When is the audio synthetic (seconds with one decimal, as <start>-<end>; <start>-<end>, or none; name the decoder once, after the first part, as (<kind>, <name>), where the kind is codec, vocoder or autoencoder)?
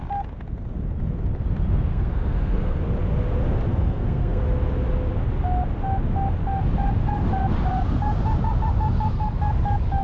1.9-2.8 (codec, SNAC); 3.7-4.4